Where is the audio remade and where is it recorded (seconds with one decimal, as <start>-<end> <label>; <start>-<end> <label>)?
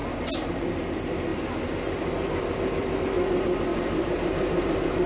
0.0-1.3 recorded; 1.3-3.0 remade; 3.0-3.7 recorded; 3.7-5.1 remade